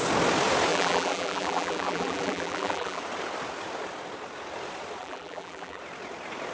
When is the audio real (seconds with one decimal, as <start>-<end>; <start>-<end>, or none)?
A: 0.0-0.7; 3.0-5.0; 5.8-6.5